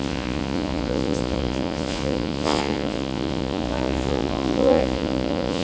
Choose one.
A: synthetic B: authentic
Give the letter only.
A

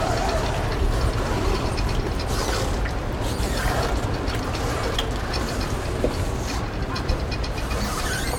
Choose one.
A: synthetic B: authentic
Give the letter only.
A